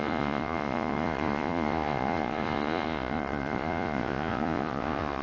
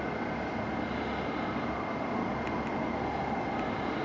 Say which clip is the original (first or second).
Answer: second